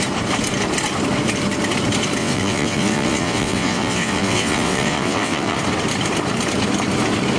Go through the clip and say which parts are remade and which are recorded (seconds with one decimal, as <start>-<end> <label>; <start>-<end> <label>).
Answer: 0.0-2.2 recorded; 2.2-5.6 remade; 5.6-7.4 recorded